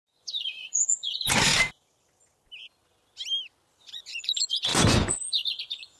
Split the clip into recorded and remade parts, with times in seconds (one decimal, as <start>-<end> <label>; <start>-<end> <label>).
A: 0.0-1.5 remade; 1.5-3.8 recorded; 3.8-6.0 remade